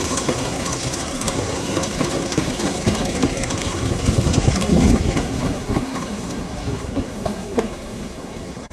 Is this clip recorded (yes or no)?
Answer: no